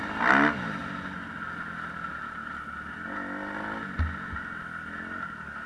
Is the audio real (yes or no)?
yes